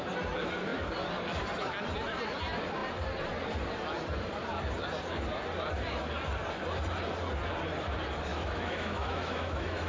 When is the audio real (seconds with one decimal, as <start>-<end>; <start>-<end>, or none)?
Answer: 0.0-8.3